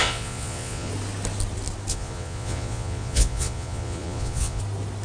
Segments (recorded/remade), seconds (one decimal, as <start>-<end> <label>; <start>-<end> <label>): 0.0-0.9 remade; 0.9-1.9 recorded; 1.9-4.6 remade; 4.6-5.0 recorded